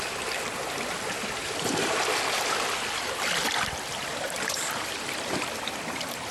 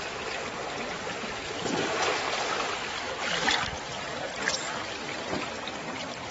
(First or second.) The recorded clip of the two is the second